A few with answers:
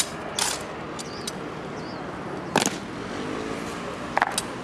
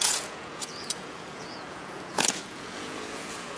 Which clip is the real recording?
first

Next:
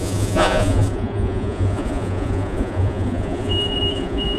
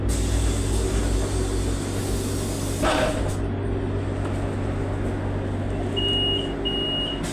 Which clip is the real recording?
second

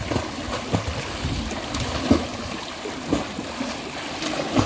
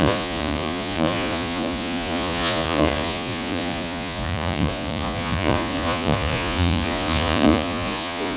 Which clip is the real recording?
first